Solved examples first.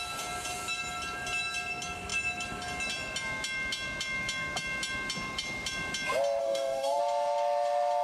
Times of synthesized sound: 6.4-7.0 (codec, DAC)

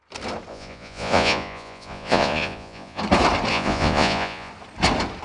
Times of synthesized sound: 0.5-3.0 (vocoder, Vocos); 3.5-4.5

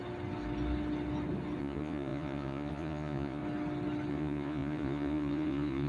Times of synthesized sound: 1.6-3.4 (vocoder, Vocos); 4.1-5.9

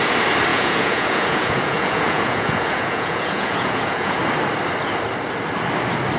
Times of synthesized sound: 0.5-4.2 (vocoder, Vocos)